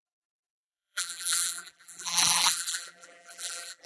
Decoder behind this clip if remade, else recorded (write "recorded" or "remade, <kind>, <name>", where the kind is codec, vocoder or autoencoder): remade, vocoder, BigVGAN v2